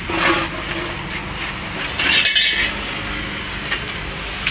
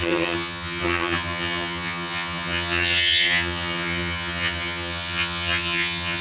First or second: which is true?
first